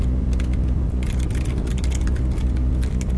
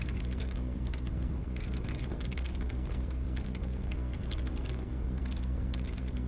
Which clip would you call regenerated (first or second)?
second